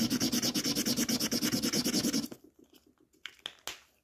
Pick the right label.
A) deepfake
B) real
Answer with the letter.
B